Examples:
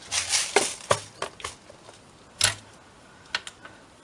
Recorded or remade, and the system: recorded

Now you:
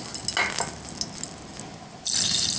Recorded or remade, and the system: recorded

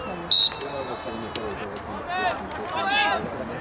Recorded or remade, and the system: recorded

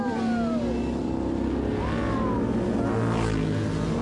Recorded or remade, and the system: recorded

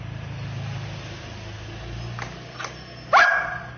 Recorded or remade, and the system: recorded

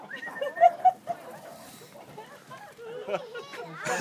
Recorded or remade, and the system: remade, vocoder, BigVGAN v2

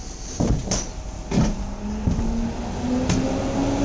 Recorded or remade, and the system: recorded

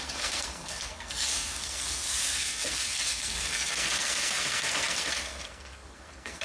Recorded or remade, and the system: remade, codec, SNAC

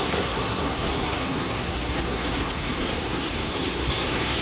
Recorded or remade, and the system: remade, codec, SNAC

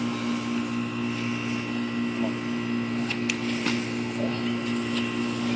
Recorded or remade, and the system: recorded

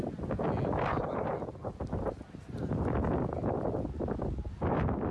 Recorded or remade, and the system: recorded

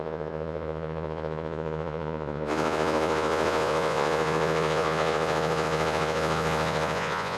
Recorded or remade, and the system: remade, vocoder, Vocos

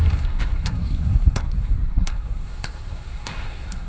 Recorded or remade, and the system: remade, codec, SNAC